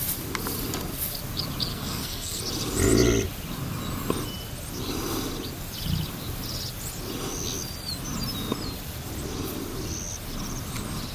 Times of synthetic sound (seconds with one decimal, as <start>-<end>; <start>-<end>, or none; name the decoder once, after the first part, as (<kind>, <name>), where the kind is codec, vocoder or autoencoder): 1.7-2.4 (codec, SNAC)

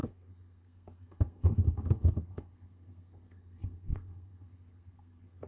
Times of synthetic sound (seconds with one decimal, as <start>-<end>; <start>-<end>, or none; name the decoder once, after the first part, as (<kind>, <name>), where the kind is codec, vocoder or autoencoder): 0.0-5.5 (codec, SNAC)